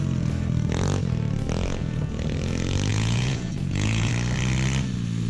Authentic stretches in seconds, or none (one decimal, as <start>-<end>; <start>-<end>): 0.0-1.7; 2.2-2.9; 4.1-5.3